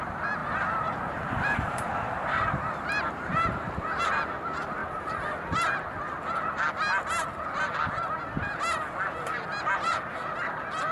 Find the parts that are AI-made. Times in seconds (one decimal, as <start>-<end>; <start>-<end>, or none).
0.4-4.0